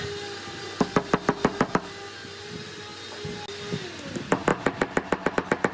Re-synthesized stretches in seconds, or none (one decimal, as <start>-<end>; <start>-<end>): none